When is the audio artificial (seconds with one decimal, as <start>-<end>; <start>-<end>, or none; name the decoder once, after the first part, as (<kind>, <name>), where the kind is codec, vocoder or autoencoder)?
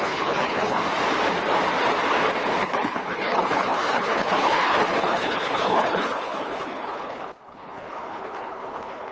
0.0-0.8 (codec, HILCodec); 2.6-9.1